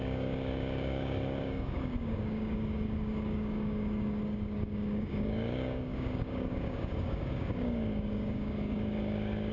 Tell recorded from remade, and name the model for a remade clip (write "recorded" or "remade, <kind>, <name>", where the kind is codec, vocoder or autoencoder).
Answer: remade, codec, DAC